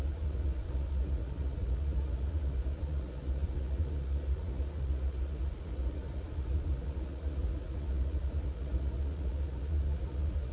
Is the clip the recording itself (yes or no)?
no